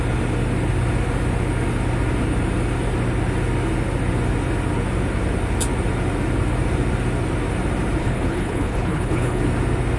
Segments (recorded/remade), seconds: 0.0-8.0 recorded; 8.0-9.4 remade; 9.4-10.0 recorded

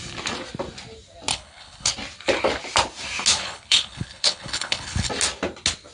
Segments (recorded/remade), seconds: 0.0-1.3 recorded; 1.3-1.9 remade; 1.9-3.3 recorded; 3.3-5.1 remade; 5.1-5.9 recorded